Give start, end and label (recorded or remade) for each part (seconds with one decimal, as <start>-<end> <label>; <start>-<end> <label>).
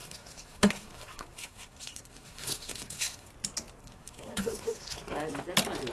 0.0-3.3 remade; 3.3-3.8 recorded; 3.8-5.0 remade; 5.0-5.9 recorded